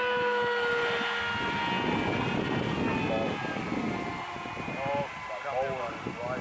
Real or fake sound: real